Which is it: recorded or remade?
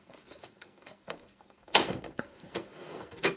remade